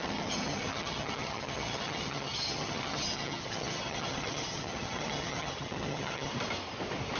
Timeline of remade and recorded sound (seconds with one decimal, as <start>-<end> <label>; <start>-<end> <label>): 0.0-6.3 remade; 6.3-7.2 recorded